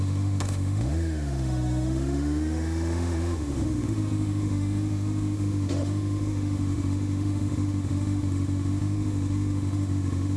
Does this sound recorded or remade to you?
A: remade